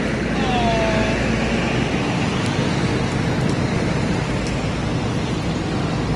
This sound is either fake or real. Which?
real